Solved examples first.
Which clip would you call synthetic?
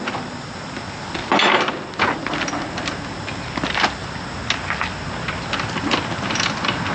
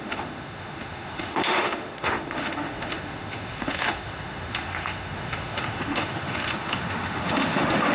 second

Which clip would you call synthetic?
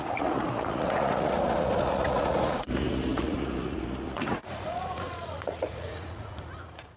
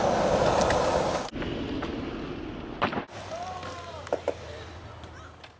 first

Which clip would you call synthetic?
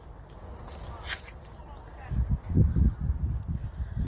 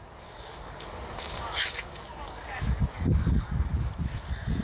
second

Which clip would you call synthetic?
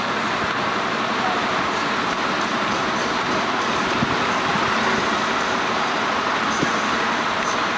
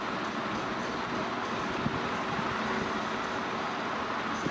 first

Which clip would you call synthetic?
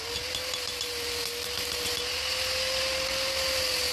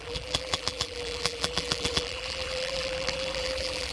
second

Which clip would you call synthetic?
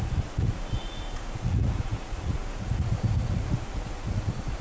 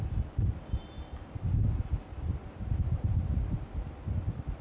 first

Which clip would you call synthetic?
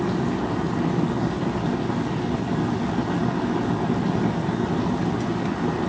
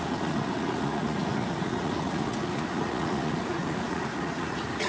second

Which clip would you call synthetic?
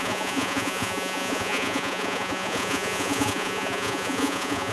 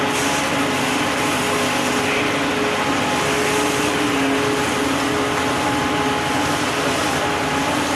first